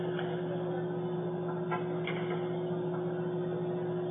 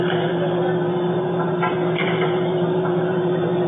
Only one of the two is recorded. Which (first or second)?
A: first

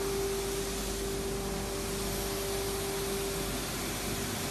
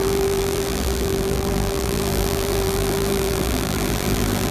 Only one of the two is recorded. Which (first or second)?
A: first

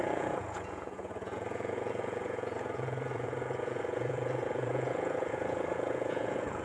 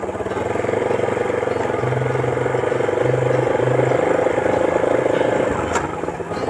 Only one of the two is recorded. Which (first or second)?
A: second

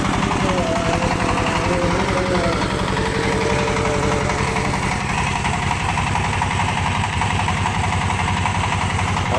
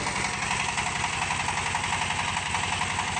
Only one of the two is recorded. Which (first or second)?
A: second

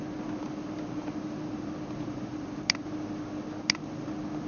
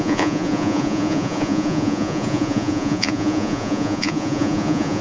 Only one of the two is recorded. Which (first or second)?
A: first